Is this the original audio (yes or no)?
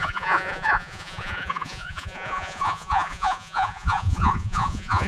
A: no